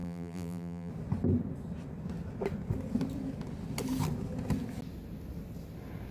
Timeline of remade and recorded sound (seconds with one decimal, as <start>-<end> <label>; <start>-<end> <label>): 0.0-0.9 remade; 0.9-6.1 recorded